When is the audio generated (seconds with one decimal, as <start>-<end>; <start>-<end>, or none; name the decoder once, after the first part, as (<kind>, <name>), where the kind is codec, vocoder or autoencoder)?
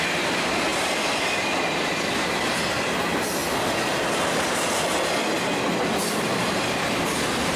0.7-1.9 (vocoder, BigVGAN v2)